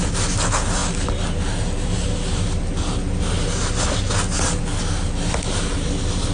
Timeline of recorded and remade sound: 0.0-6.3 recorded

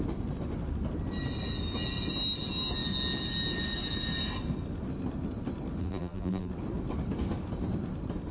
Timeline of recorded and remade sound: 0.0-5.8 recorded; 5.8-6.5 remade; 6.5-8.3 recorded

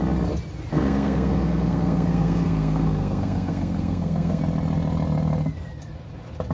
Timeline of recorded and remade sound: 0.0-0.7 recorded; 0.7-4.4 remade; 4.4-6.5 recorded

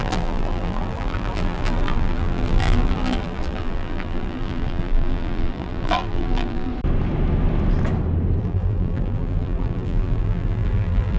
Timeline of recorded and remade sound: 0.0-6.7 remade; 6.7-8.4 recorded; 8.4-11.2 remade

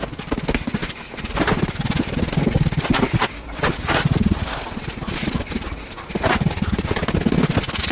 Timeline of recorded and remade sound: 0.0-7.9 recorded

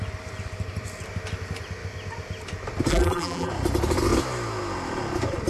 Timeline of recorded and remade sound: 0.0-2.9 recorded; 2.9-3.5 remade; 3.5-5.5 recorded

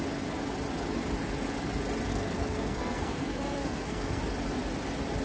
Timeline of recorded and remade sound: 0.0-2.1 recorded; 2.1-4.2 remade; 4.2-5.2 recorded